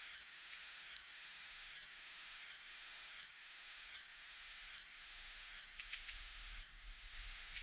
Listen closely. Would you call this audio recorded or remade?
remade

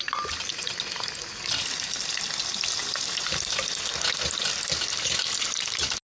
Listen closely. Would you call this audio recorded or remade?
recorded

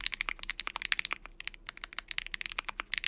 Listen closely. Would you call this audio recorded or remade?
recorded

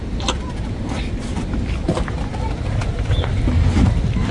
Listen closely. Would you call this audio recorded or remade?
recorded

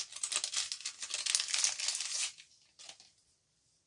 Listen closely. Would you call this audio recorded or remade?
recorded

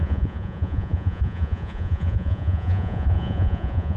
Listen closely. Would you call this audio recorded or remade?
remade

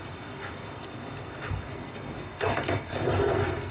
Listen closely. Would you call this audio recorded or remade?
remade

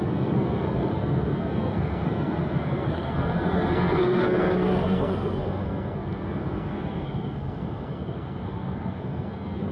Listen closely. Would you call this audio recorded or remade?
remade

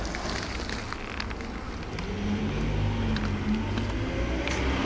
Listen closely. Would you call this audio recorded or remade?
recorded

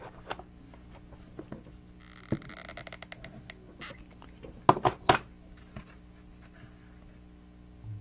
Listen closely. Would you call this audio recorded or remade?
recorded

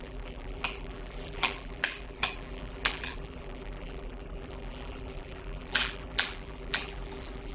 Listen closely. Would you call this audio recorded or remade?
remade